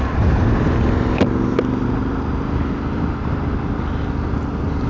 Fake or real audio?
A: real